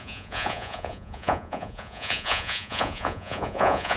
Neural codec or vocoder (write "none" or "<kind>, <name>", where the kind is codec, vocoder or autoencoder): vocoder, Vocos